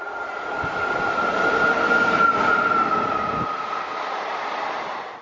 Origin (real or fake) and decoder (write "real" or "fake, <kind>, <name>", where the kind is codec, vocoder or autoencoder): real